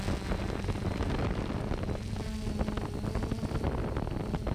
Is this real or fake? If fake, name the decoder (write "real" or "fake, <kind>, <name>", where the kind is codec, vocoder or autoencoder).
real